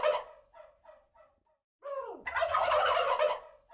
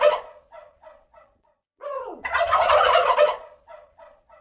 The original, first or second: first